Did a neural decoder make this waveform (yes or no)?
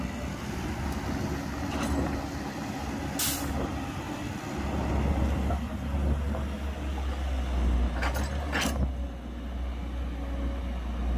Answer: no